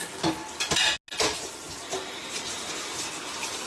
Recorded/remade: recorded